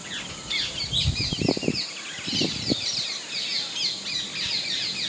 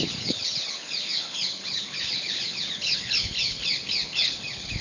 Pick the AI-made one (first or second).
second